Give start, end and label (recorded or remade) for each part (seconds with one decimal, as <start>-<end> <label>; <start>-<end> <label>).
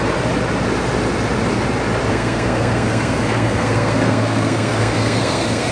0.0-2.1 recorded; 2.1-5.7 remade